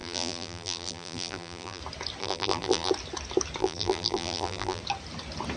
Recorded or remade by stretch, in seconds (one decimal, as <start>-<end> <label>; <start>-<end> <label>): 0.0-1.8 remade; 1.8-2.2 recorded; 2.2-2.9 remade; 2.9-3.6 recorded; 3.6-4.8 remade; 4.8-5.6 recorded